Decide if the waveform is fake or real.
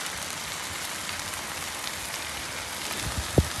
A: real